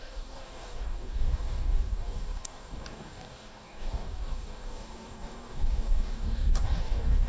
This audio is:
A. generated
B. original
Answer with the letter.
A